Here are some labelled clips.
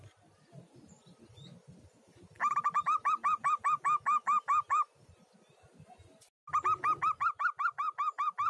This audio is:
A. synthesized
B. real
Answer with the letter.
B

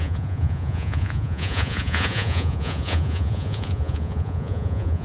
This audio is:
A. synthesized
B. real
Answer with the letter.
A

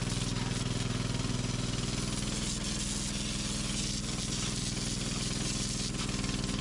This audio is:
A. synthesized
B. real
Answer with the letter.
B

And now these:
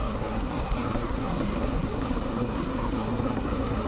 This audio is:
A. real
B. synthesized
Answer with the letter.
B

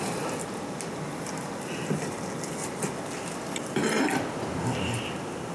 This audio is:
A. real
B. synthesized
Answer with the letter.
A